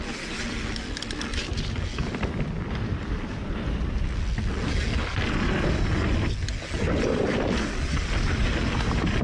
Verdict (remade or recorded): recorded